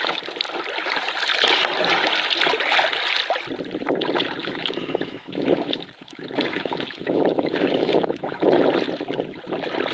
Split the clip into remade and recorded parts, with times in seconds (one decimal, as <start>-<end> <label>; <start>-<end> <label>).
0.0-4.4 recorded; 4.4-8.6 remade; 8.6-9.9 recorded